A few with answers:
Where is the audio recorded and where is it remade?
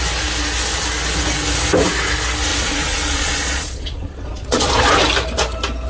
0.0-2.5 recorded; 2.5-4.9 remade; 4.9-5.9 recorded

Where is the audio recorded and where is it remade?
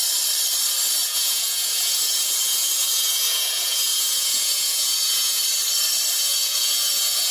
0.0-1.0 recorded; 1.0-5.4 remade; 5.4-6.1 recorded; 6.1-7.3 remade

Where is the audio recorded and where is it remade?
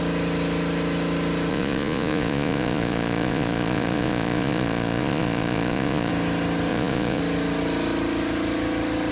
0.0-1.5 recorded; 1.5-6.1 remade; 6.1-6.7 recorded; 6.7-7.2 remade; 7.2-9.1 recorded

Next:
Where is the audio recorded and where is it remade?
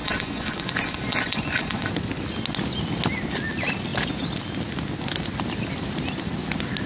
0.0-1.9 remade; 1.9-6.9 recorded